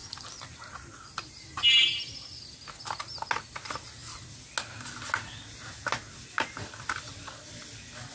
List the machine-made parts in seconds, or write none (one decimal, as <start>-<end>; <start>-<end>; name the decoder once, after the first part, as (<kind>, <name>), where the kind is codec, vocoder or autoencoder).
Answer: none